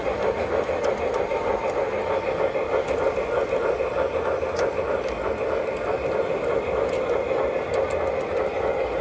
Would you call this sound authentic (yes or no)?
yes